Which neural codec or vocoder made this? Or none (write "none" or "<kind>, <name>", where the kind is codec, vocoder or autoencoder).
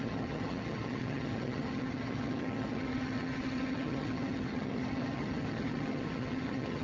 vocoder, HiFi-GAN